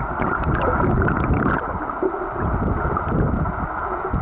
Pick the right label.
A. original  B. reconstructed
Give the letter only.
A